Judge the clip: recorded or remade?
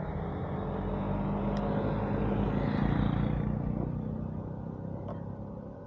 recorded